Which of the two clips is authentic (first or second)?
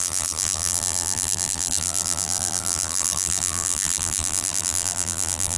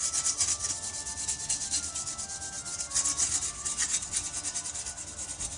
second